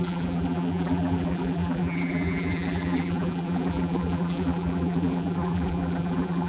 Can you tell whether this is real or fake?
fake